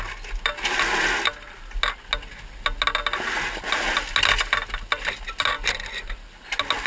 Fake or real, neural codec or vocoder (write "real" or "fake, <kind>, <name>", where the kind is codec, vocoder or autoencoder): real